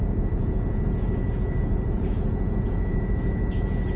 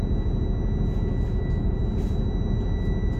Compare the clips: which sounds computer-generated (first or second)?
first